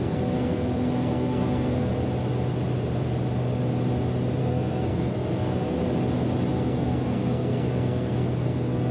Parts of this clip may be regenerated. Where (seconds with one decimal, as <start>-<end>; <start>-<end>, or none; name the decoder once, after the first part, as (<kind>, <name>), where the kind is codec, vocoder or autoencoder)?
0.0-1.9 (codec, SNAC); 4.4-5.8; 6.5-8.9